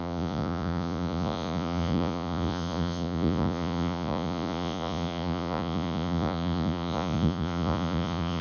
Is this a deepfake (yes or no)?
yes